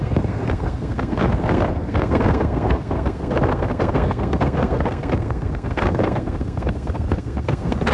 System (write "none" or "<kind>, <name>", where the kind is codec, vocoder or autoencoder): codec, SNAC